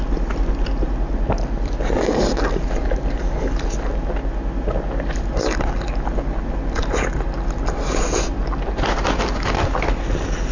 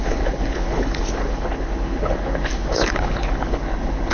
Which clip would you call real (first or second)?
first